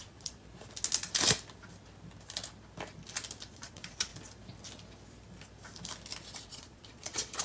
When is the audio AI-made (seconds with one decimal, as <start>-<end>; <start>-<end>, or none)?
0.0-0.4; 3.5-4.1; 6.5-7.4